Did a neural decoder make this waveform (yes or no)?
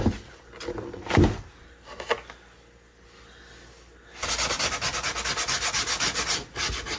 no